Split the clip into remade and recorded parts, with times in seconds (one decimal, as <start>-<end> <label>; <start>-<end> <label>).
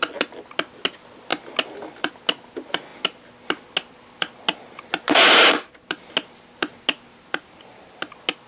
0.0-8.5 recorded